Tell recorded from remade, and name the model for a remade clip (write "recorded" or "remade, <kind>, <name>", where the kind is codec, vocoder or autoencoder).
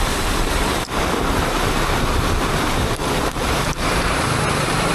remade, vocoder, BigVGAN v2